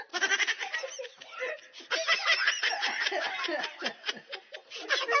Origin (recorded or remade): recorded